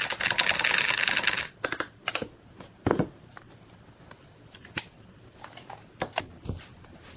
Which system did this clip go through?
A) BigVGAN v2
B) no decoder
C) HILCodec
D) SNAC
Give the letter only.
B